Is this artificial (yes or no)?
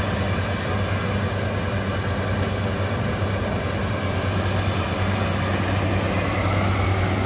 no